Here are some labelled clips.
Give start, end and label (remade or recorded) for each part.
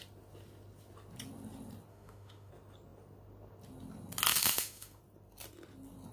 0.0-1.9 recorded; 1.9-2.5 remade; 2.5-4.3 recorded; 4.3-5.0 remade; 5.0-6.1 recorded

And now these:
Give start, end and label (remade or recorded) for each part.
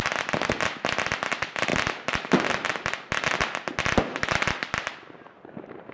0.0-5.9 recorded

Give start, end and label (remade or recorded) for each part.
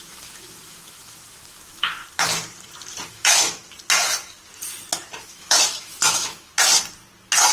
0.0-2.0 remade; 2.0-3.1 recorded; 3.1-3.6 remade; 3.6-5.2 recorded; 5.2-6.5 remade; 6.5-7.5 recorded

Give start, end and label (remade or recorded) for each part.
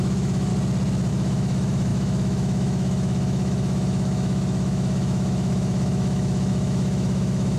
0.0-0.5 remade; 0.5-1.1 recorded; 1.1-7.6 remade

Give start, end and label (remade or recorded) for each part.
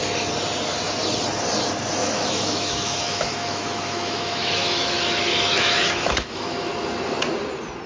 0.0-2.0 recorded; 2.0-6.7 remade; 6.7-7.9 recorded